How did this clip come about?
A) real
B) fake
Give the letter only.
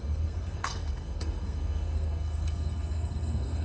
B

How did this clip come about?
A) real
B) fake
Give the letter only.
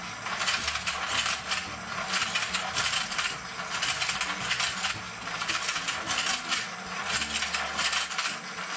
A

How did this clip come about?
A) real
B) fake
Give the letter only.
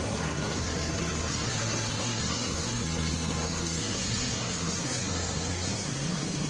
B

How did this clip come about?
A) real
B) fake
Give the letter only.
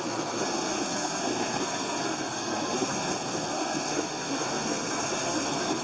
B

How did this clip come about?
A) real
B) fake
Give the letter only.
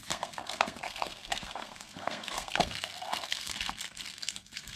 B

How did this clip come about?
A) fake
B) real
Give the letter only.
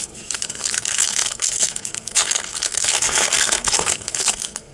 A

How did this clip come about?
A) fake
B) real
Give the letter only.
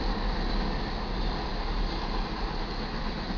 B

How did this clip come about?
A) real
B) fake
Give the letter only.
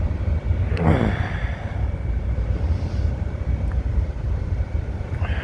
A